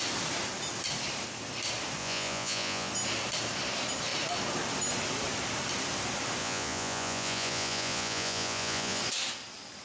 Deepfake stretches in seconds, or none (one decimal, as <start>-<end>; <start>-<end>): 2.0-2.9; 6.4-9.0